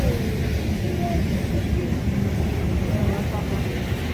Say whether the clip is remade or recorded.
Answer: recorded